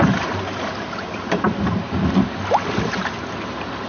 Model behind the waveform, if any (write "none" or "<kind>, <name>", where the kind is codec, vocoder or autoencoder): none